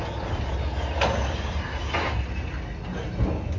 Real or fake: real